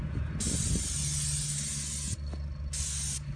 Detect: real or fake real